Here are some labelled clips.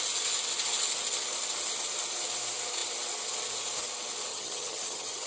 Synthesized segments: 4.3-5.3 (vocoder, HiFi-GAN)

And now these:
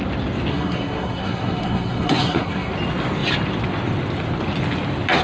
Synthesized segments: 0.5-2.7 (codec, SNAC)